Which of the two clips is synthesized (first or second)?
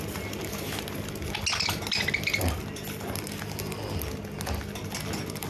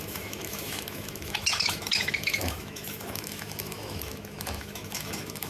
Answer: second